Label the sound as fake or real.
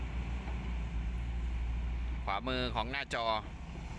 real